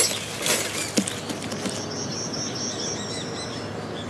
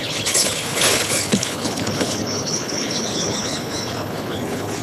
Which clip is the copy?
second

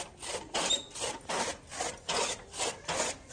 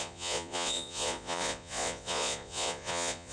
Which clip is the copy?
second